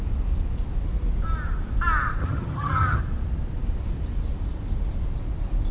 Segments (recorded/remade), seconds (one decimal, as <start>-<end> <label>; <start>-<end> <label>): 0.0-2.2 recorded; 2.2-3.0 remade; 3.0-5.7 recorded